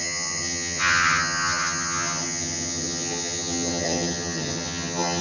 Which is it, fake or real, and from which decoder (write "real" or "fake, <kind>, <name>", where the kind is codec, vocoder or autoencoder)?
fake, vocoder, HiFi-GAN